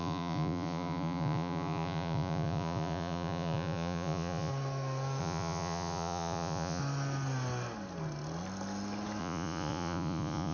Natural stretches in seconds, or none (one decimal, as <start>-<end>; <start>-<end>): 4.5-5.2; 6.8-9.2